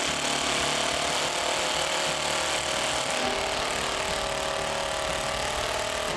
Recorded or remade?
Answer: recorded